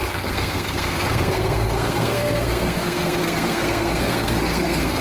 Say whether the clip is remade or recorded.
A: remade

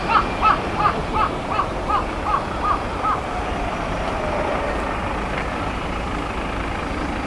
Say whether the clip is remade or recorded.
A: remade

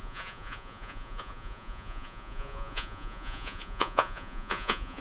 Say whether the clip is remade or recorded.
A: remade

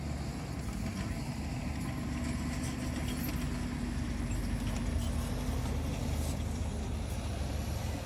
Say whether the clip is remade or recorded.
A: recorded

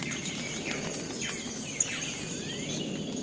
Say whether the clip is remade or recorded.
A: recorded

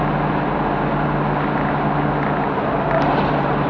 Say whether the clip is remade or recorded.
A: recorded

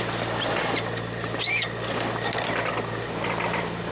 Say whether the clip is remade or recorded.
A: recorded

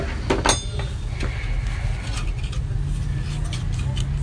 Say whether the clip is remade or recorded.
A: recorded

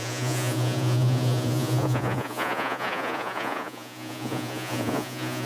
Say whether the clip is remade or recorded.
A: remade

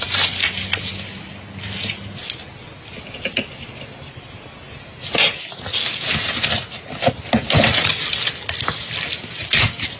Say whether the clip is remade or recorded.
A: recorded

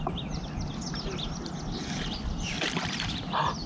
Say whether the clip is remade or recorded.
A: recorded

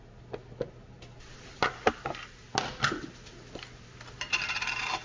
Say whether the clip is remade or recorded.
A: recorded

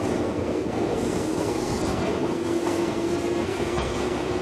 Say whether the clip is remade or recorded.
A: remade